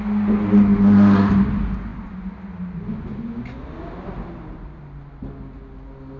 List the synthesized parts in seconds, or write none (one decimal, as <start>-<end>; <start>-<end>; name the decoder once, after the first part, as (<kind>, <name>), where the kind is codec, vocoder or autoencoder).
none